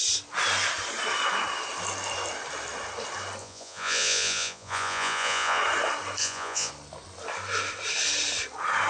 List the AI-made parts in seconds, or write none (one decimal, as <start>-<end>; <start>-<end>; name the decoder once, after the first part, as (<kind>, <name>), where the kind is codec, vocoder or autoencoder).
3.4-5.6 (vocoder, Vocos); 6.2-6.7